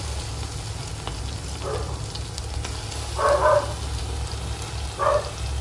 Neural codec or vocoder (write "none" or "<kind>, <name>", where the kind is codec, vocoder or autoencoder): none